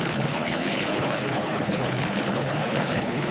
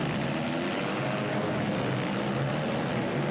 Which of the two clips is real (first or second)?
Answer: second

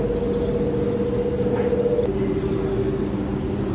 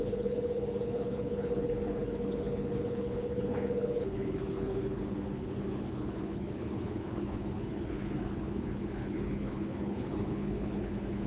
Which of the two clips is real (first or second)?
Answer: first